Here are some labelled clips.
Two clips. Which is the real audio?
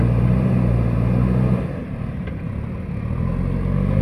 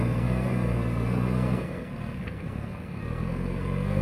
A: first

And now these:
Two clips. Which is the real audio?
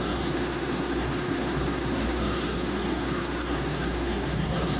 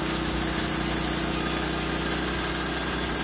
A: second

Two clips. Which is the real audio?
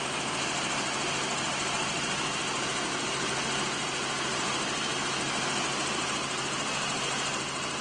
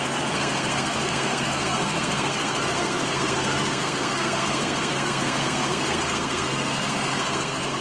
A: first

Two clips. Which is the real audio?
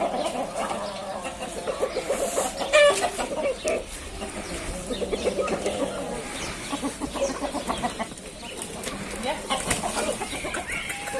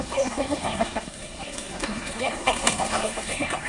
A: first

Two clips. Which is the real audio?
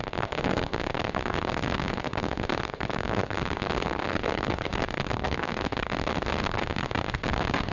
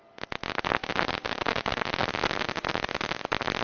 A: second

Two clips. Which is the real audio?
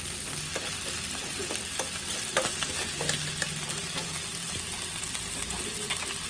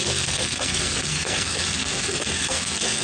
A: first